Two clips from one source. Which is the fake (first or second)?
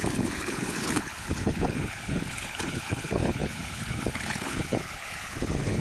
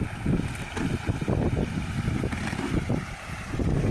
first